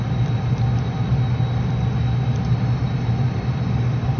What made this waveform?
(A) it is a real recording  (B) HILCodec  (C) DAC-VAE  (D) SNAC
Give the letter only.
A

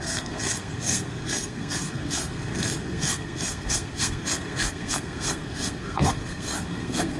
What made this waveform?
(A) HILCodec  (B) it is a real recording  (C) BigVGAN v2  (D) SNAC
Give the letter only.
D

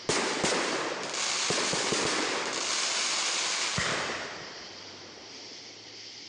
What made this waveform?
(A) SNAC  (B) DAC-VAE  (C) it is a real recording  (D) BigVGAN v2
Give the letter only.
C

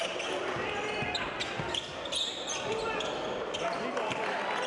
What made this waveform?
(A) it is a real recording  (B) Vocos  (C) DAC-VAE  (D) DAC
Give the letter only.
A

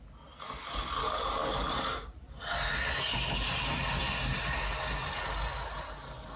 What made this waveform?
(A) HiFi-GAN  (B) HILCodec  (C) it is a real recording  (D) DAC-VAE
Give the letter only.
C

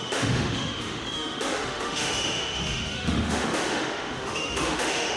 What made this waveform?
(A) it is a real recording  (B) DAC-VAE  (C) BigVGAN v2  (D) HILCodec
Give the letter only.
B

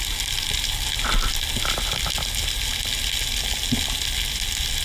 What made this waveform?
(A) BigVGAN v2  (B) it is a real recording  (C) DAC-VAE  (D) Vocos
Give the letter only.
B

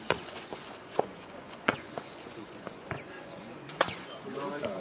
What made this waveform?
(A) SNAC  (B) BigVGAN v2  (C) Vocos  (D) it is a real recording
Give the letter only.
C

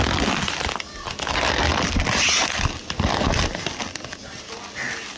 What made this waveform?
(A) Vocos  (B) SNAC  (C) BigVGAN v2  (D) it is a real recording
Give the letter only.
D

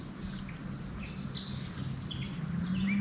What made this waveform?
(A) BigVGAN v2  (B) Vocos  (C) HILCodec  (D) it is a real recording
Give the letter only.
D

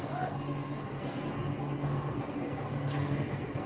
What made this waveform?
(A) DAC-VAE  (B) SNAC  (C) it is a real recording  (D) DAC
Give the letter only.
B